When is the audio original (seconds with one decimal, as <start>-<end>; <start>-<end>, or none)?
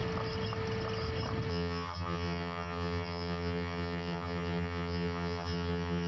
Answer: 0.0-1.5